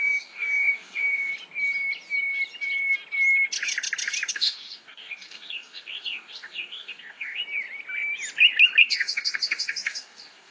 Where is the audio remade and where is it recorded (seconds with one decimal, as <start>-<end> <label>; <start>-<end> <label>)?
0.0-1.3 remade; 1.3-4.3 recorded; 4.3-7.4 remade; 7.4-8.8 recorded; 8.8-10.5 remade

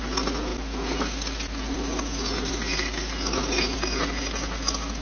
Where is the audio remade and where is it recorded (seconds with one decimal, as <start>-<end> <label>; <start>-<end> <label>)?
0.0-5.0 recorded

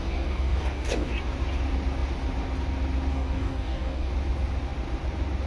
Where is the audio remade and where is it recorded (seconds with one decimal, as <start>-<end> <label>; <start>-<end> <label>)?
0.0-1.1 remade; 1.1-3.1 recorded; 3.1-4.1 remade; 4.1-5.5 recorded